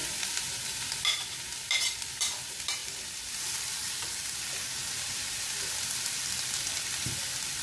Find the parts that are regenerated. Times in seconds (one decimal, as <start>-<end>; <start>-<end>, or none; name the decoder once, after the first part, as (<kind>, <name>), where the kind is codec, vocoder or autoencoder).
0.0-7.6 (vocoder, BigVGAN v2)